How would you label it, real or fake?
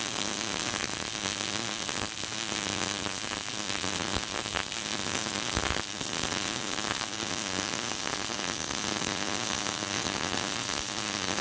real